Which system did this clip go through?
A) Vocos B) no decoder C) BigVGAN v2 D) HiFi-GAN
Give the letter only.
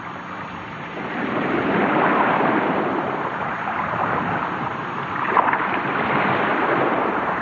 C